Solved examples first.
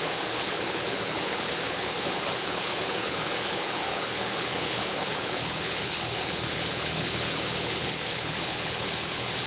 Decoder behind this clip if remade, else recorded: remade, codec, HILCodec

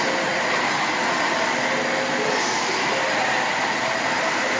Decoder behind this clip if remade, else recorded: recorded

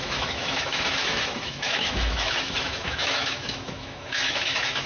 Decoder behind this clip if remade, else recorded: remade, autoencoder, DAC-VAE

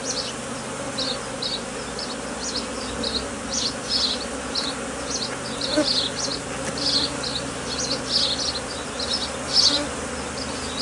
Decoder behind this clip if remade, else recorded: recorded